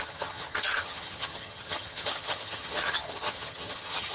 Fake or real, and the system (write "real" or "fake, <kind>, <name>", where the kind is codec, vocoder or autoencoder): fake, vocoder, HiFi-GAN